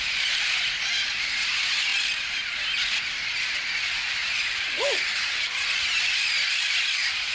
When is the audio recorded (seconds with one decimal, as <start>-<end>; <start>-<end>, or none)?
0.0-4.2; 5.8-7.3